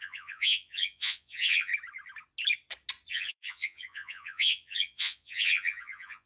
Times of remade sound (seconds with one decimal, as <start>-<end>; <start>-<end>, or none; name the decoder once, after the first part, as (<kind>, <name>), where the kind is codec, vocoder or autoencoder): 0.0-1.7 (vocoder, Vocos); 3.1-6.3